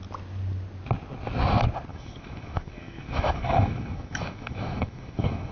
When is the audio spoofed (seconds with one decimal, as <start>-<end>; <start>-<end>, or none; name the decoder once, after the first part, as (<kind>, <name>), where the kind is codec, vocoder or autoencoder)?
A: 1.9-5.5 (autoencoder, DAC-VAE)

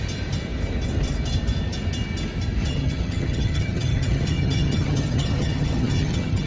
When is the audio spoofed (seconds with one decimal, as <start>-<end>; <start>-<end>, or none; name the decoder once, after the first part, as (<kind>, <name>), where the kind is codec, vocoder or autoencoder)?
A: 2.6-6.5 (vocoder, HiFi-GAN)

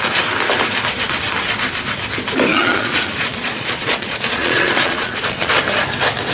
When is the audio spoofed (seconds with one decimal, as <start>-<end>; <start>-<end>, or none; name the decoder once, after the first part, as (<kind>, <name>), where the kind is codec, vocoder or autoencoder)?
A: 2.5-5.5 (vocoder, Vocos)

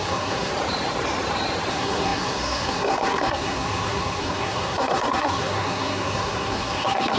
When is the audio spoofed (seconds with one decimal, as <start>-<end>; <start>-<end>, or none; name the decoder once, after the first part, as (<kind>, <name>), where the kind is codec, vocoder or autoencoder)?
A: 0.0-0.5 (codec, SNAC); 1.7-7.2